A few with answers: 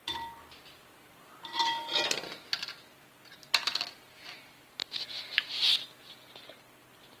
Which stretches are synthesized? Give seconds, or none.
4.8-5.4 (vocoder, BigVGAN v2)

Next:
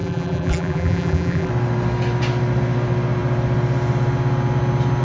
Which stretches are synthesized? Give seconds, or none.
0.0-1.5 (vocoder, BigVGAN v2)

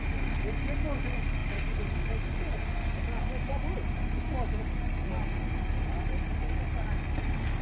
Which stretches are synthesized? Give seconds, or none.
none

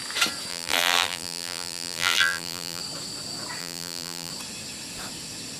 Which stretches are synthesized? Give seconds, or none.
0.5-2.8 (vocoder, BigVGAN v2); 3.6-4.3

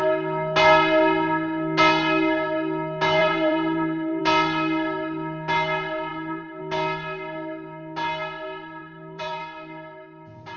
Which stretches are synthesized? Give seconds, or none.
3.2-4.2 (vocoder, BigVGAN v2); 6.1-6.6; 8.8-9.4